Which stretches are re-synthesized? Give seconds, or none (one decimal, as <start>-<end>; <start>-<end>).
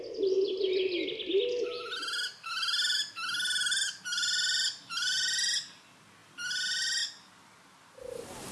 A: none